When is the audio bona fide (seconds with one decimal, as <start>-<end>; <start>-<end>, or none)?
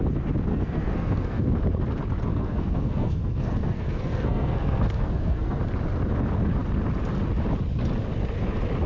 0.0-0.5; 1.5-2.3; 5.6-8.9